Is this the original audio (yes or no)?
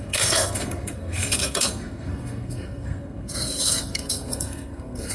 no